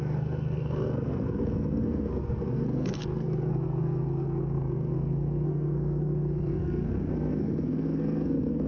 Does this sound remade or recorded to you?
remade